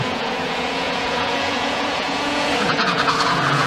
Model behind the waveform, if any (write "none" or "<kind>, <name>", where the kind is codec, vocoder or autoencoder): vocoder, Vocos